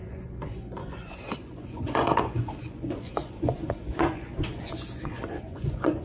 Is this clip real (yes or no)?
no